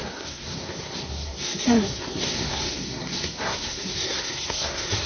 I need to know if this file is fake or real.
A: fake